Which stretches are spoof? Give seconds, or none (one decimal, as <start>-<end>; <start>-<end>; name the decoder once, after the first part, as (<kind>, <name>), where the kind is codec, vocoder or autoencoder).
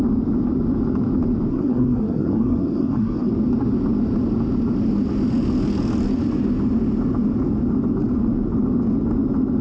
1.5-3.3 (codec, SNAC)